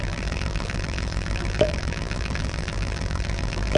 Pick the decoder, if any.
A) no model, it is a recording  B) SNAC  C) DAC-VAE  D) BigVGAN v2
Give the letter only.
D